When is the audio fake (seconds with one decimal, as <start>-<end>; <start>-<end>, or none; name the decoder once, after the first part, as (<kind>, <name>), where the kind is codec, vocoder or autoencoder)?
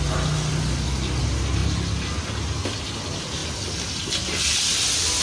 none